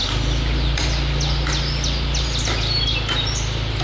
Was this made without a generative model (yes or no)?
yes